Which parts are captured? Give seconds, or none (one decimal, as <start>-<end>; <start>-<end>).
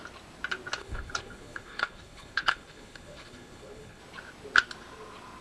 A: 0.0-0.8; 4.0-5.4